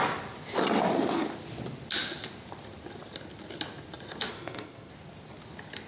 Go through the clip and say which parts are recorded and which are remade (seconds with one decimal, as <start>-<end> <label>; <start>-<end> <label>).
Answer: 0.0-4.3 recorded; 4.3-4.9 remade; 4.9-5.9 recorded